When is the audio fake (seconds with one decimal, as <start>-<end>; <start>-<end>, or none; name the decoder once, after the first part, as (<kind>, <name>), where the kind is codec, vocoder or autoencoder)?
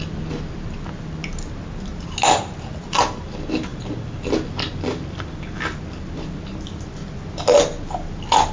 none